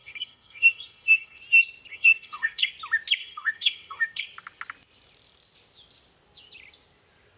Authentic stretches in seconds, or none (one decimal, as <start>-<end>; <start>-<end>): 1.4-1.9; 2.7-3.2; 4.2-7.4